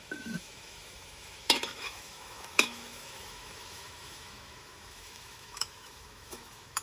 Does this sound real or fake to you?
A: fake